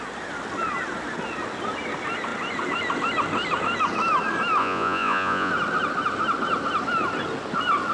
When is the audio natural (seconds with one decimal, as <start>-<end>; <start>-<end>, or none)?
0.0-4.6; 5.5-7.9